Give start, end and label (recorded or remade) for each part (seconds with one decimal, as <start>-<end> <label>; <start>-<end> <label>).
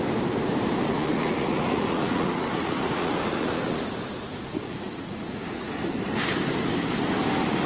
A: 0.0-0.9 recorded; 0.9-5.4 remade; 5.4-7.7 recorded